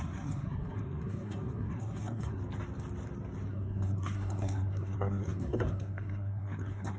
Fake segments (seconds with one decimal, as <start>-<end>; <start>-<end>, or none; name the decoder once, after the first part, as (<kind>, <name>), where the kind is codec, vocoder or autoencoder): 0.0-2.4 (codec, SNAC); 3.5-7.0